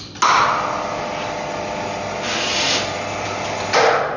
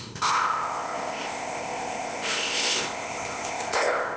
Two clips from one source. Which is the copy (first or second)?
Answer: second